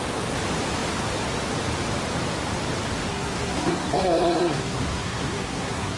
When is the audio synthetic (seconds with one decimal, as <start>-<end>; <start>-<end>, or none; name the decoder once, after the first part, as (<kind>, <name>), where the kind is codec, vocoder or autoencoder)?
3.1-6.0 (codec, SNAC)